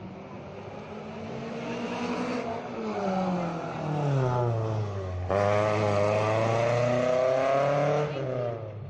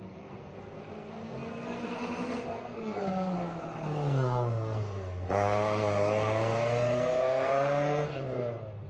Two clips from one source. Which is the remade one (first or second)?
second